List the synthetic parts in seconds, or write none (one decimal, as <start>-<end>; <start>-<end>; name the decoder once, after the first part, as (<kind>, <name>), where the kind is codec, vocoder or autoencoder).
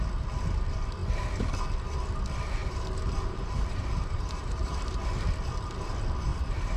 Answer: 2.6-5.0 (vocoder, BigVGAN v2); 6.3-6.8